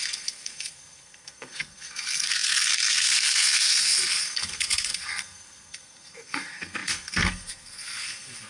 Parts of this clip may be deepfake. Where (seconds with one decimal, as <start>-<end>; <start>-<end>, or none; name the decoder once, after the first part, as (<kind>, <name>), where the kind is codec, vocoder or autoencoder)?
0.0-8.5 (codec, SNAC)